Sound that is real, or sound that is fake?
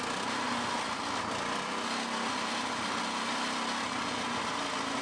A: real